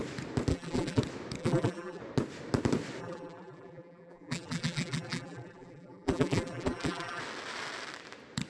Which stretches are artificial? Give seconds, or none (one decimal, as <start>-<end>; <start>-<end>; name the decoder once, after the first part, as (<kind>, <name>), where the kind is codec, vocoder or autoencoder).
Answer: 0.5-1.0 (vocoder, BigVGAN v2); 1.4-2.0; 3.0-7.2